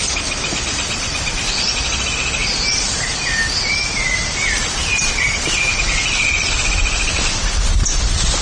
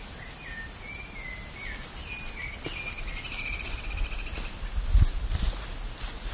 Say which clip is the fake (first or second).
first